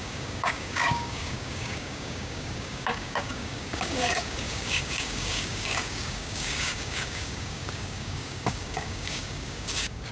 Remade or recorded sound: remade